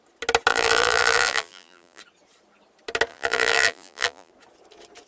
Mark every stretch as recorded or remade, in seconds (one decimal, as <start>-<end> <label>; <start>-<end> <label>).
0.0-0.5 recorded; 0.5-2.0 remade; 2.0-3.1 recorded; 3.1-4.3 remade; 4.3-5.1 recorded